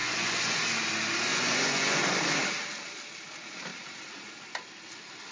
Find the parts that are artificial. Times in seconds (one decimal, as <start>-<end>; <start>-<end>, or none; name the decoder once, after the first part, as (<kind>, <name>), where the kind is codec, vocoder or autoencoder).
0.0-0.6 (vocoder, Vocos); 1.3-2.0